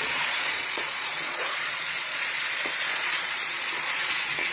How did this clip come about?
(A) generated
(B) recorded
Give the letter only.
A